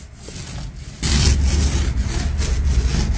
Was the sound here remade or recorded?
recorded